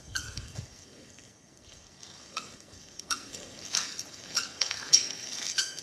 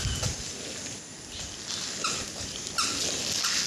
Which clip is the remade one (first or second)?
first